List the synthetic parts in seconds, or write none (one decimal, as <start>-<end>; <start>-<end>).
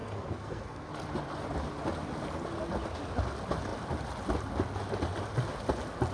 0.0-0.9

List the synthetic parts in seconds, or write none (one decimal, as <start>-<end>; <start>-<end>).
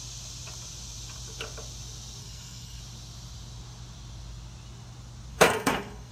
2.2-2.8; 5.3-6.1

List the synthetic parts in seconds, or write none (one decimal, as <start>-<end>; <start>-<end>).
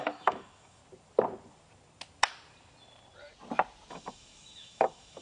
0.0-0.8; 3.9-5.2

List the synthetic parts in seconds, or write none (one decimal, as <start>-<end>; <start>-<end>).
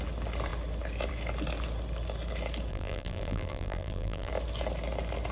2.7-4.3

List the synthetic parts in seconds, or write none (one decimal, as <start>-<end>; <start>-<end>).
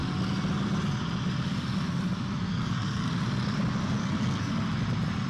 2.5-3.1; 4.0-4.5